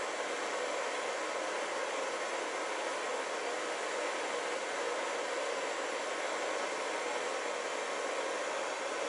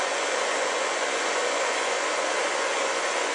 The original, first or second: first